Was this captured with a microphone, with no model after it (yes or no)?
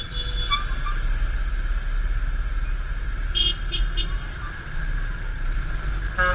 yes